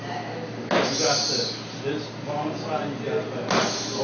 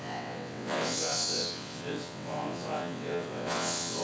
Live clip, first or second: first